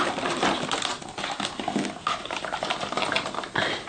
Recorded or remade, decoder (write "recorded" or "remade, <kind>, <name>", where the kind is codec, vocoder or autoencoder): recorded